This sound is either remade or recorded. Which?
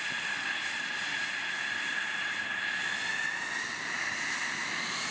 recorded